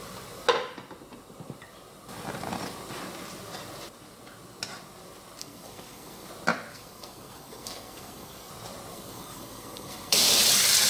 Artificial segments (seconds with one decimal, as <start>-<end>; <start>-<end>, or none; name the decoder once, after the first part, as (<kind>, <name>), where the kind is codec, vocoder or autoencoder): 5.4-6.3 (codec, SNAC); 6.7-8.5; 8.9-10.3